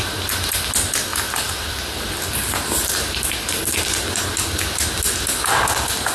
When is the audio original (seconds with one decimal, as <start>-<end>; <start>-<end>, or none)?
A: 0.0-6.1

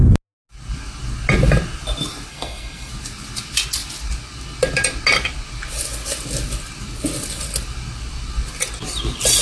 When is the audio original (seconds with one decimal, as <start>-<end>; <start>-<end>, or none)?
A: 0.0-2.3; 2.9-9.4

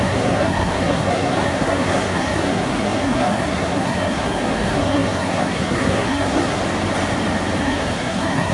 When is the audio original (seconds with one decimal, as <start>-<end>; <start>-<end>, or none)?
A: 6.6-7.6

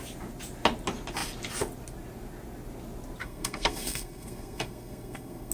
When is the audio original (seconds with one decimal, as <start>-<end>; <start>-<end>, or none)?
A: 0.0-3.2

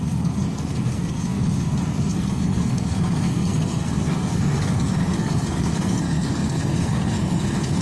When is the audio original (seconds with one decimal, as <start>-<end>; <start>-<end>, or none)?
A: none

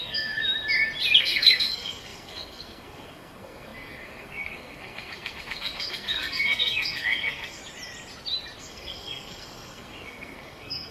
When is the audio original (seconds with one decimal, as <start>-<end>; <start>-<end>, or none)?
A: 0.4-1.2; 7.6-8.6